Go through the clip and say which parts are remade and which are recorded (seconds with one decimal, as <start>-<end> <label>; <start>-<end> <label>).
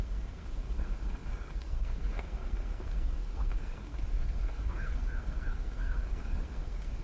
0.0-7.0 remade